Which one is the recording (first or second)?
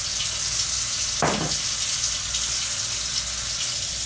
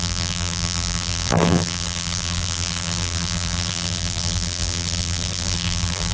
first